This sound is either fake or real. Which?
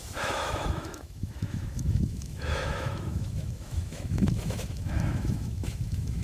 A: fake